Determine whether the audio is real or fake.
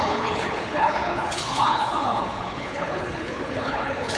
fake